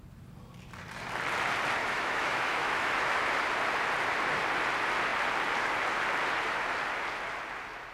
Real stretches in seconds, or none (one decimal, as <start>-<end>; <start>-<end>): 0.0-1.8; 3.3-7.9